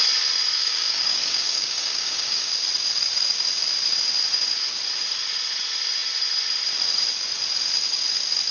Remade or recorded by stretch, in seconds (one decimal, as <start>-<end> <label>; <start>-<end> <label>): 0.0-0.6 recorded; 0.6-2.5 remade; 2.5-8.5 recorded